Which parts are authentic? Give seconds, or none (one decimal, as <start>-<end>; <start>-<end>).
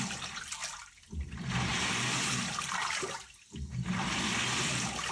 0.0-5.1